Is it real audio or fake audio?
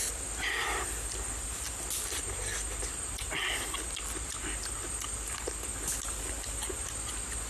real